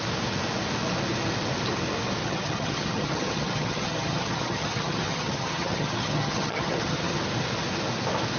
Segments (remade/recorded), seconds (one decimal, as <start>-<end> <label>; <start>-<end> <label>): 0.0-2.2 recorded; 2.2-7.2 remade; 7.2-8.4 recorded